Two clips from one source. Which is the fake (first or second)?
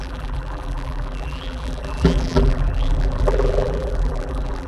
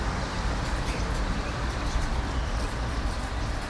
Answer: first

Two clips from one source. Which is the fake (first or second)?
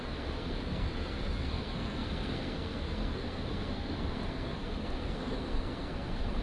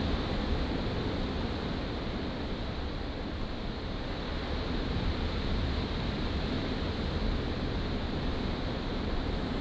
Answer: first